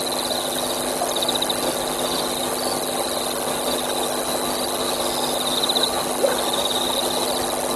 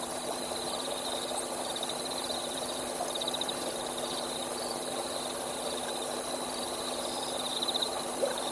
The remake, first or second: second